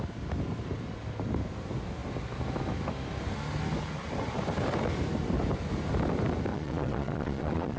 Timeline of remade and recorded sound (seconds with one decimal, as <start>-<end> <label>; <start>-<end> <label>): 0.0-6.5 recorded; 6.5-7.8 remade